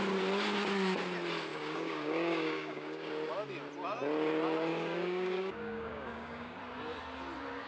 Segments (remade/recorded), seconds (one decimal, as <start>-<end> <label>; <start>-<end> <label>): 0.0-1.5 recorded; 1.5-3.1 remade; 3.1-4.7 recorded; 4.7-6.6 remade; 6.6-7.7 recorded